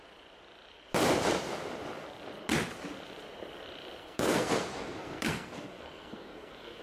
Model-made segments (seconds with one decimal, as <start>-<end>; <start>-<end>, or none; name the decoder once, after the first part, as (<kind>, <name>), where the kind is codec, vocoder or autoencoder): 4.0-6.8 (codec, SNAC)